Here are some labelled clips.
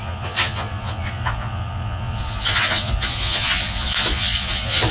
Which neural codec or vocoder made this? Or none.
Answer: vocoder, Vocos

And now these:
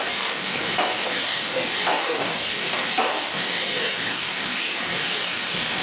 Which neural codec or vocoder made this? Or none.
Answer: codec, DAC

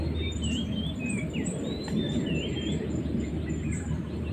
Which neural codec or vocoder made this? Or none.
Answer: vocoder, BigVGAN v2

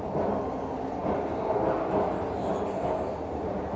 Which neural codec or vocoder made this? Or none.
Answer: none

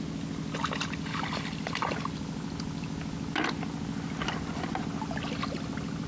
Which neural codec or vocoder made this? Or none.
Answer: none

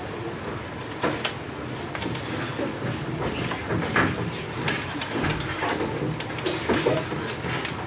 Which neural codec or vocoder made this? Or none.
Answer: none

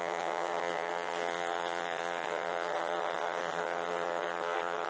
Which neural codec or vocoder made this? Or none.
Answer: vocoder, HiFi-GAN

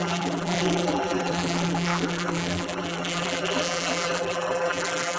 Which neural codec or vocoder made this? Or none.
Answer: vocoder, BigVGAN v2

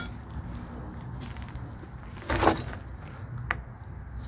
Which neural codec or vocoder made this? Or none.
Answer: none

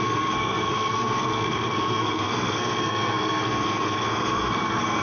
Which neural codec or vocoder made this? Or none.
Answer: codec, SNAC